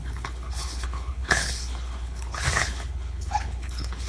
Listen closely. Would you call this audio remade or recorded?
remade